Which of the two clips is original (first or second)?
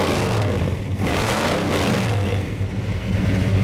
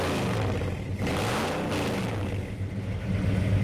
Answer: second